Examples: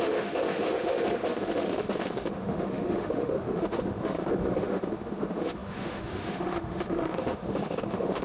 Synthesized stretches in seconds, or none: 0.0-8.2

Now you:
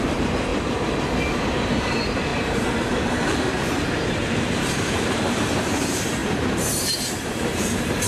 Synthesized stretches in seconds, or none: 0.0-8.1

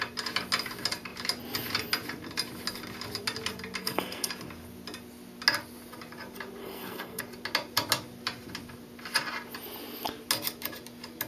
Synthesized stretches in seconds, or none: 3.8-4.3; 6.6-7.2

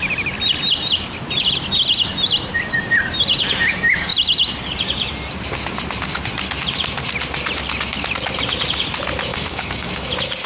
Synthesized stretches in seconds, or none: 9.3-10.1

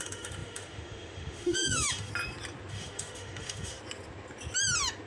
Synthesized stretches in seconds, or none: 0.0-2.1; 2.7-3.8